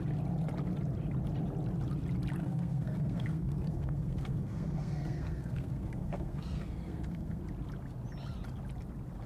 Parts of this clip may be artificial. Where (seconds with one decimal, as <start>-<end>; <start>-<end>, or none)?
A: 2.4-7.4